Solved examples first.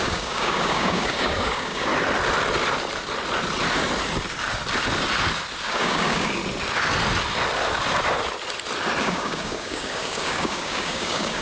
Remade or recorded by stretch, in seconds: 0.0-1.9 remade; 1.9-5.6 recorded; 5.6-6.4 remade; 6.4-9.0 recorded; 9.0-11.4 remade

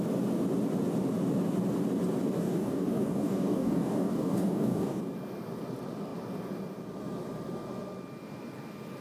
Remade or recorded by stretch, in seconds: 0.0-2.4 recorded; 2.4-5.0 remade; 5.0-9.0 recorded

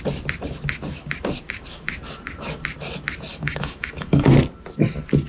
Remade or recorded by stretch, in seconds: 0.0-3.3 recorded; 3.3-4.3 remade; 4.3-5.3 recorded

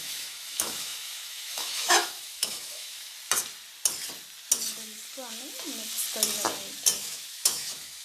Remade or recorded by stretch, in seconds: 0.0-3.1 remade; 3.1-7.0 recorded; 7.0-8.0 remade

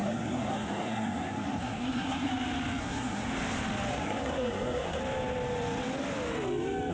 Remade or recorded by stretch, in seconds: 0.0-2.3 remade; 2.3-2.8 recorded; 2.8-3.3 remade; 3.3-3.9 recorded; 3.9-5.0 remade; 5.0-6.9 recorded